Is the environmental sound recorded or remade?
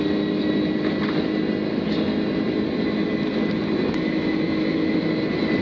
recorded